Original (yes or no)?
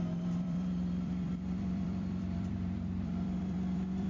no